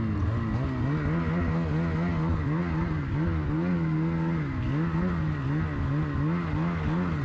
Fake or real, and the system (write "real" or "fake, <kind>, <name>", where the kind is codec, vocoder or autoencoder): real